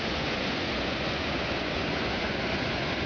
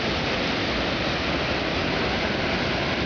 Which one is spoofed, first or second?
first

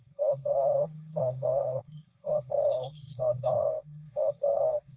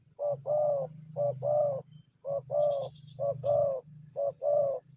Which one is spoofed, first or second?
first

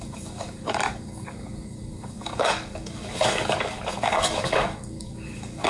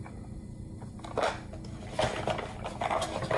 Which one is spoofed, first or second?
first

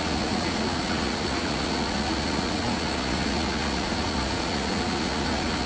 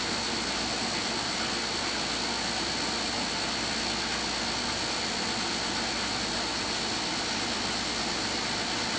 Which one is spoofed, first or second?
first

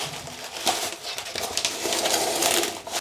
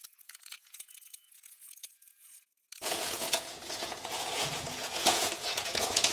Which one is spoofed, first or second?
second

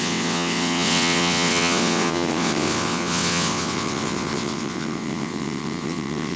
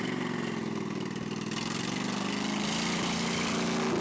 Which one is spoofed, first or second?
first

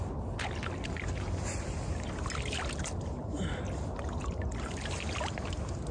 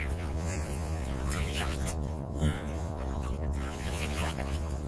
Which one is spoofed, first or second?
second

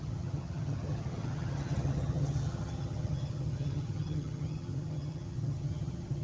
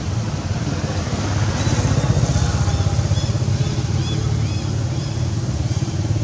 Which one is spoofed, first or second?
first